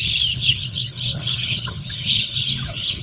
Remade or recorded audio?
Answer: remade